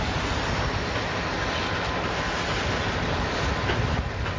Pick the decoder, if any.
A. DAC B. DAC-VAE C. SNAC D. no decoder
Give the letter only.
D